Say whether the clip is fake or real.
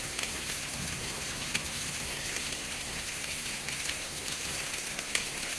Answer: fake